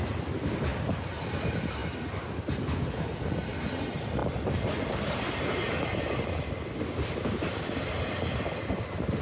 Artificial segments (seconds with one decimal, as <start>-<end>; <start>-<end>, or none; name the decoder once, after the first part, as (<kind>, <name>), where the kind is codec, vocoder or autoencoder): none